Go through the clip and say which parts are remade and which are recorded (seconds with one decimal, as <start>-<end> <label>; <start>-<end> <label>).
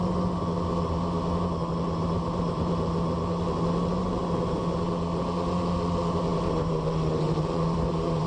0.0-2.0 recorded; 2.0-2.7 remade; 2.7-4.0 recorded; 4.0-4.6 remade; 4.6-6.3 recorded; 6.3-8.3 remade